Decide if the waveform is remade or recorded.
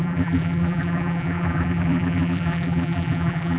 remade